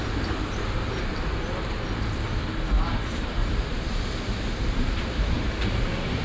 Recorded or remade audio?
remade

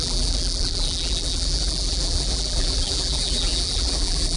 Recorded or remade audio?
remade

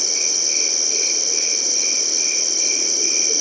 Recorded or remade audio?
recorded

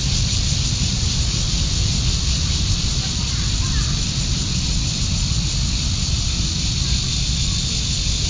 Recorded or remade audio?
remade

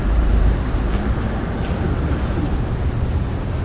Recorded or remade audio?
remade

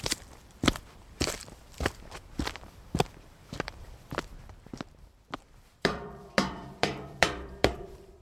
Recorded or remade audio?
remade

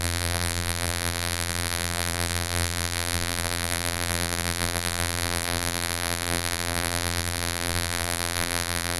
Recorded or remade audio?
remade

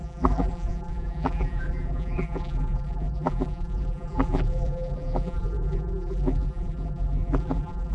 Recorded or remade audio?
remade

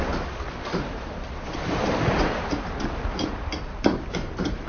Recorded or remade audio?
remade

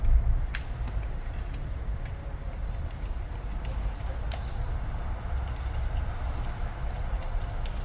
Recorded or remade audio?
recorded